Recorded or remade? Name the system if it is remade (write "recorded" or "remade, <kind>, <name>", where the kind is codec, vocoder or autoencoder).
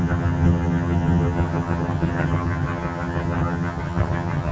remade, vocoder, HiFi-GAN